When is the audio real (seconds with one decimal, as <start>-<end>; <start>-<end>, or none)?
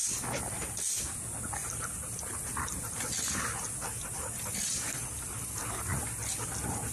0.0-6.9